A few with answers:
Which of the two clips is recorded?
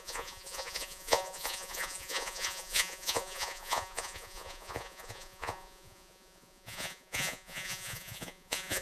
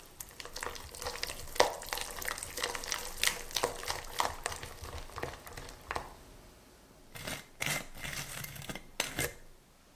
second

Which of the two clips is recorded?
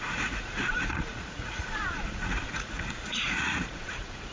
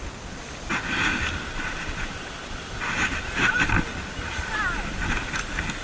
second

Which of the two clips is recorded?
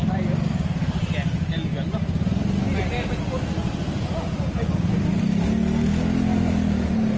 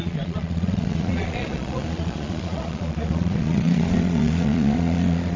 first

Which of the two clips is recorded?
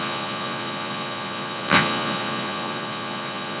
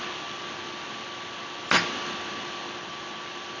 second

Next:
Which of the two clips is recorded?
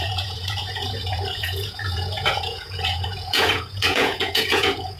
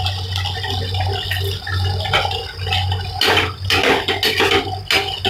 second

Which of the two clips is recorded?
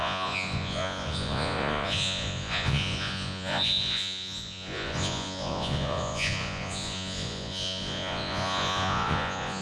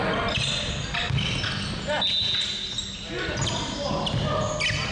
second